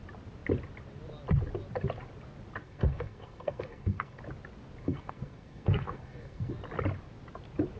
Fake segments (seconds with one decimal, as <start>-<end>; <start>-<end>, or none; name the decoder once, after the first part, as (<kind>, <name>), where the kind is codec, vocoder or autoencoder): 2.6-4.2 (codec, SNAC); 4.8-6.5